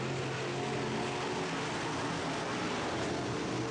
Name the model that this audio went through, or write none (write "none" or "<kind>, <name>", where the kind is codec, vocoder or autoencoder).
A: none